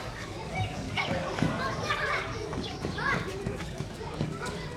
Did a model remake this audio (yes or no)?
yes